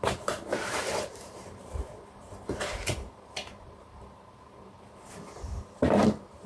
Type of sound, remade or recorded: remade